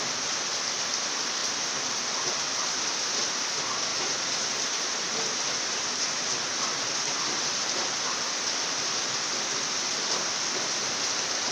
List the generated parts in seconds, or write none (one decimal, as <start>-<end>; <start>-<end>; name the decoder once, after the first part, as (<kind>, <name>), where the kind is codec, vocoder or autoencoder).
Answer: none